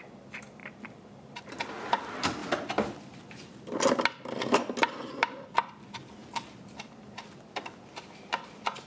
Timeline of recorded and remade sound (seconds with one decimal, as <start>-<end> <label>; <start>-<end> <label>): 0.0-8.9 recorded